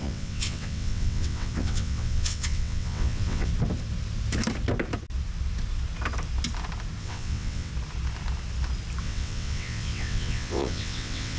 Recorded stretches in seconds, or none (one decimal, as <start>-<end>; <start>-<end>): 3.5-7.0; 7.7-9.0